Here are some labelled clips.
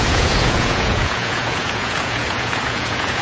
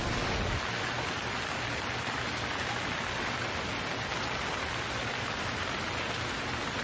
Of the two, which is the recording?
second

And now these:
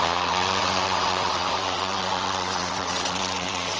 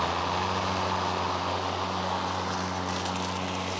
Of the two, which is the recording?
second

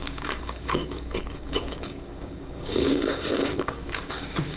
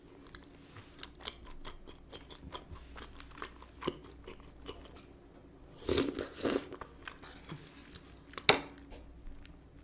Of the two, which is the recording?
second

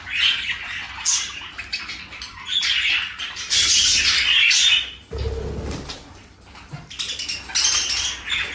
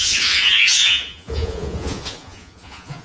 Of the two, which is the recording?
first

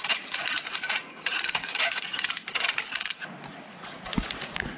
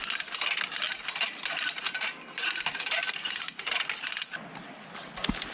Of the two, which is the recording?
second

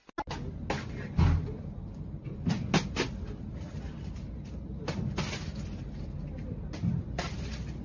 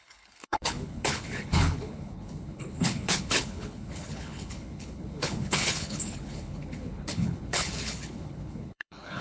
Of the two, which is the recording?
first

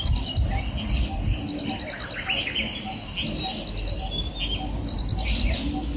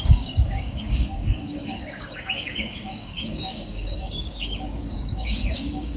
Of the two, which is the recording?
first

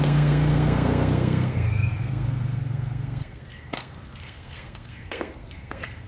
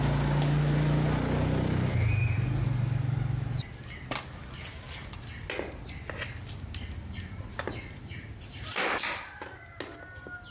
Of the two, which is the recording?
second